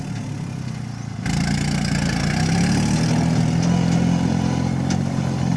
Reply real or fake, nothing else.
real